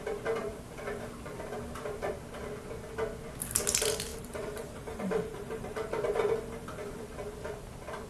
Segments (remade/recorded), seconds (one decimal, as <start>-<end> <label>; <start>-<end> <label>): 0.0-0.4 recorded; 0.4-2.1 remade; 2.1-4.1 recorded; 4.1-7.0 remade; 7.0-8.1 recorded